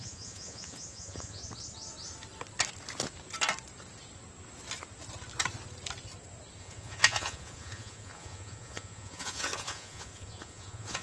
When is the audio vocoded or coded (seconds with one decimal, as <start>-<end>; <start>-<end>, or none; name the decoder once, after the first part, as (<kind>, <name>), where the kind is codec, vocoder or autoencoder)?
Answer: 0.0-1.4 (vocoder, Vocos); 6.6-11.0